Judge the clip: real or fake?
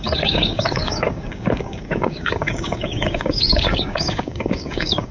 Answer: fake